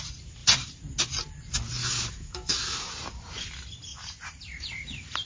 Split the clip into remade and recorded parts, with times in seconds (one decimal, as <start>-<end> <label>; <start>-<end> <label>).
0.0-1.8 recorded; 1.8-2.9 remade; 2.9-5.3 recorded